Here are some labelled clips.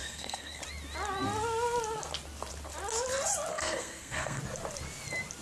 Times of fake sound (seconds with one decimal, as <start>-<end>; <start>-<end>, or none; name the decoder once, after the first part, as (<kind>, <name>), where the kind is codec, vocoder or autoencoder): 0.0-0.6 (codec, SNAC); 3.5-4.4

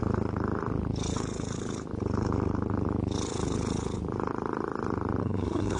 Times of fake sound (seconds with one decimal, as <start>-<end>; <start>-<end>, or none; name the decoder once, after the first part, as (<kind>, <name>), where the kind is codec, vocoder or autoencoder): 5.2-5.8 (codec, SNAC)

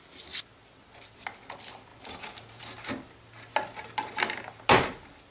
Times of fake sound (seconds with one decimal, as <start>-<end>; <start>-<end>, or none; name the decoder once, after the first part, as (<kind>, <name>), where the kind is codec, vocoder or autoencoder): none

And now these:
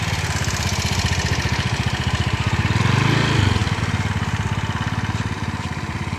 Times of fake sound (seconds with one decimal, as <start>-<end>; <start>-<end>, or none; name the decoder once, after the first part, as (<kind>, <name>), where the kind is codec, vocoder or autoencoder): none

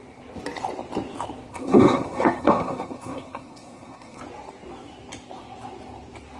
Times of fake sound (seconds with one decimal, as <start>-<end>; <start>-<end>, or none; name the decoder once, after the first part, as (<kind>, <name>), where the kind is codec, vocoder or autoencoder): 1.5-4.2 (codec, SNAC)